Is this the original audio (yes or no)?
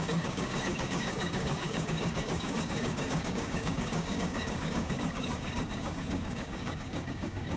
no